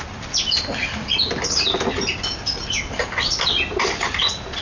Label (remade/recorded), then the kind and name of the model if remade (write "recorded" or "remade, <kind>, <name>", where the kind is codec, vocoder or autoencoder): recorded